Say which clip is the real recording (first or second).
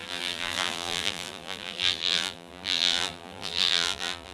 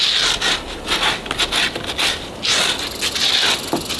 second